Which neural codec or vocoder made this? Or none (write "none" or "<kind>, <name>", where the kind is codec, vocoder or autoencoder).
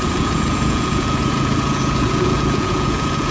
vocoder, Vocos